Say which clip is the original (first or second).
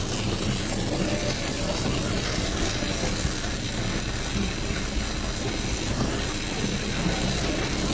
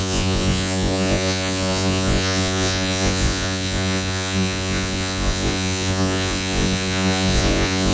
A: first